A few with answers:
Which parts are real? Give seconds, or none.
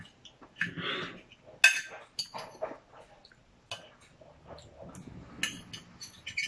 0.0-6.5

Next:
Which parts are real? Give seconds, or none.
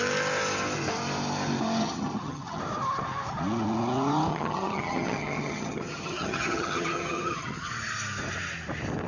0.0-1.8; 2.6-4.3; 7.7-9.1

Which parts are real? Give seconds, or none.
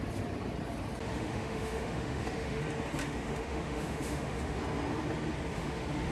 0.0-1.1; 2.6-3.0; 4.6-5.5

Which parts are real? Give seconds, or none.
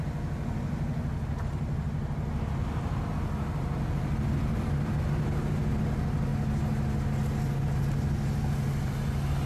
0.0-9.5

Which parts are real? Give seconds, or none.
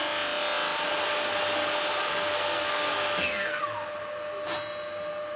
0.0-2.1; 3.6-5.4